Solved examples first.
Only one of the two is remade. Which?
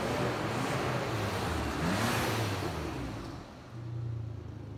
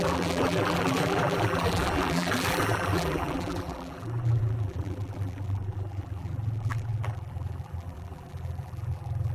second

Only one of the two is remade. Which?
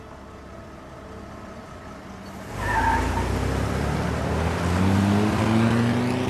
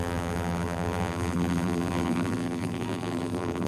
second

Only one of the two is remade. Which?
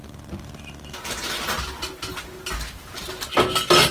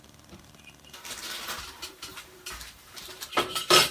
second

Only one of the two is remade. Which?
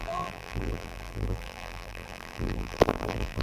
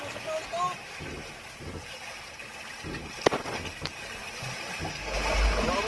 first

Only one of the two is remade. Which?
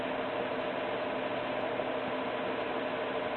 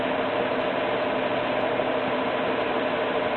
second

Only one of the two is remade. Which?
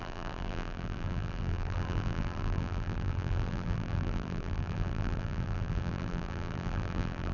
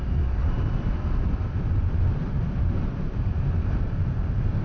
first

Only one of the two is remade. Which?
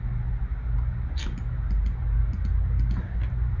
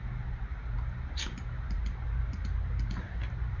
second